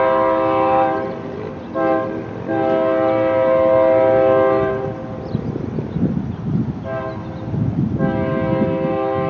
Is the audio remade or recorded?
recorded